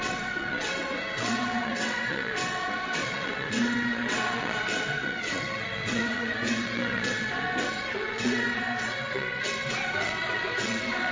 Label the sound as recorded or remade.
remade